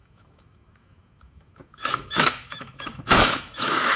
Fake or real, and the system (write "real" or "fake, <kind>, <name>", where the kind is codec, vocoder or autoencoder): fake, autoencoder, DAC-VAE